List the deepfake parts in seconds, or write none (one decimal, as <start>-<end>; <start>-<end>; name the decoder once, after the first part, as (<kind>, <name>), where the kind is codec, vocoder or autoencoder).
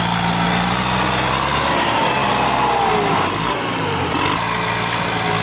none